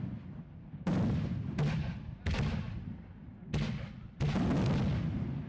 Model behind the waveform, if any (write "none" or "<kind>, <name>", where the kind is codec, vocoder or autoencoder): none